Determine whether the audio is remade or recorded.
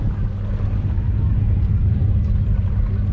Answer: recorded